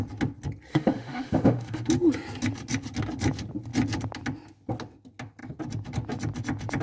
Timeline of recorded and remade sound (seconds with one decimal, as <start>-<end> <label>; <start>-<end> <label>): 0.0-0.7 recorded; 0.7-1.9 remade; 1.9-6.8 recorded